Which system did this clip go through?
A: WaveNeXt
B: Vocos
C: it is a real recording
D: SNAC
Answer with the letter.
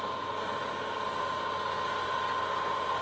C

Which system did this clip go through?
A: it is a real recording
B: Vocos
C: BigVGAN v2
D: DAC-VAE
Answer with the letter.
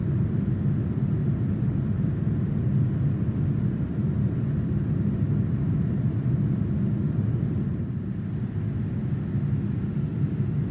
A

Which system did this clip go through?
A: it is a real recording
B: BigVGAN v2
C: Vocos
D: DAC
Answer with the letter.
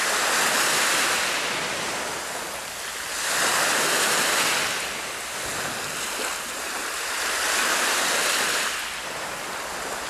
A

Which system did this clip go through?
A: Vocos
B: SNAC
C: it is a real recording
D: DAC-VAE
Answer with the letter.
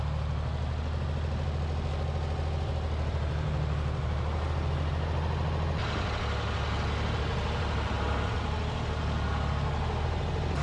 C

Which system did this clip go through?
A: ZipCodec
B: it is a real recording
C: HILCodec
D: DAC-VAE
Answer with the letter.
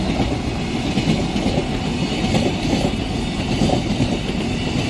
B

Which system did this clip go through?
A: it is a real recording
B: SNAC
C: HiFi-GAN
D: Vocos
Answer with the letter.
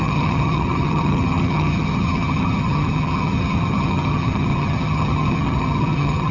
C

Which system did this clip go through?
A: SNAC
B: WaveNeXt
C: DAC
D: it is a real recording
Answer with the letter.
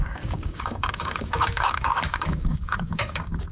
C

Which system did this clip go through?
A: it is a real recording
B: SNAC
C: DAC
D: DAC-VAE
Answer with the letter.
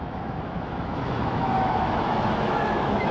D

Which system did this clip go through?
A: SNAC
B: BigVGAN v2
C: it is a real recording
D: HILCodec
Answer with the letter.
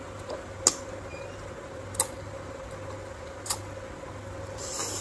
C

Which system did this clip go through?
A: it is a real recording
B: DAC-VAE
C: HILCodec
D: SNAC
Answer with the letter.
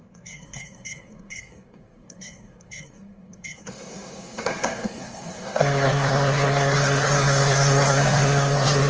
D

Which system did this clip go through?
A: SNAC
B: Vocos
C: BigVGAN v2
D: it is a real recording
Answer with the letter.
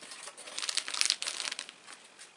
D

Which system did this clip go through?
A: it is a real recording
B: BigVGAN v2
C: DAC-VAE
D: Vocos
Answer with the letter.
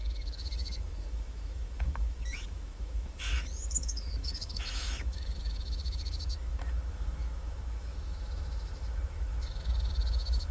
C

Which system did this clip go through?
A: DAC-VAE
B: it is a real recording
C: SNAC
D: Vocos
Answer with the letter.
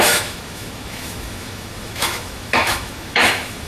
A